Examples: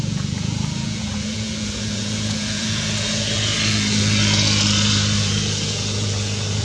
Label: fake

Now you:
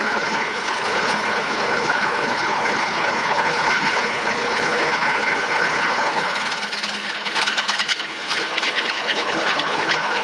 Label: fake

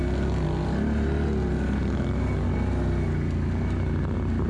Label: real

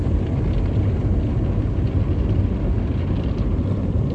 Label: real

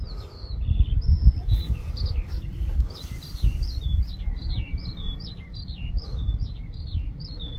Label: fake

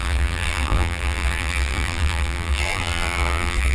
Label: fake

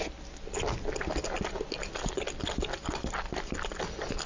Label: real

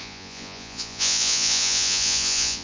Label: fake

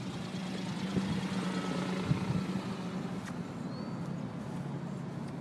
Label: real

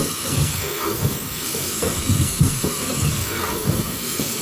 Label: fake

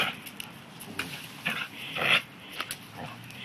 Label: real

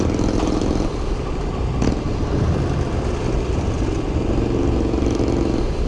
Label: real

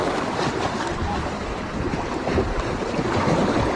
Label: real